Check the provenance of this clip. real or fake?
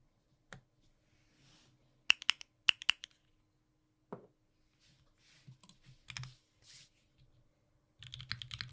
real